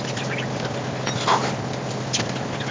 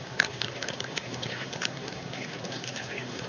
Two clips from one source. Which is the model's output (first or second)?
second